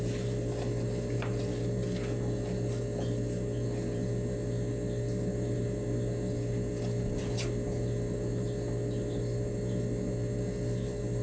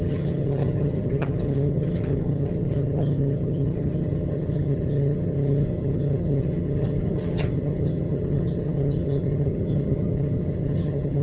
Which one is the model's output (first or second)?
second